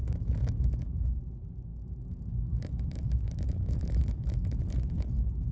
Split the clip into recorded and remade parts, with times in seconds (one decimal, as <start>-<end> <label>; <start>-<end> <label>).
0.0-1.2 remade; 1.2-1.7 recorded; 1.7-4.6 remade; 4.6-5.5 recorded